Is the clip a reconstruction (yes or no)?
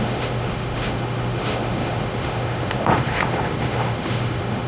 yes